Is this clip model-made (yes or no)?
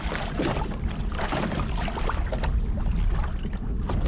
no